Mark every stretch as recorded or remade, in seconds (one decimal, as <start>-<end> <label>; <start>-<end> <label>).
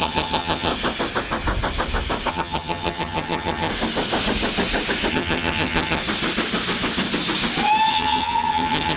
0.0-0.7 remade; 0.7-2.3 recorded; 2.3-3.7 remade; 3.7-5.1 recorded; 5.1-6.0 remade; 6.0-7.9 recorded; 7.9-9.0 remade